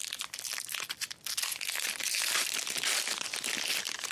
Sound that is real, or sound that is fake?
real